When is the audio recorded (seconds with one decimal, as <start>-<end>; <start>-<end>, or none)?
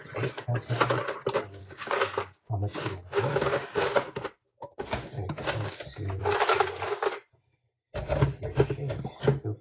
0.0-1.6; 5.7-9.6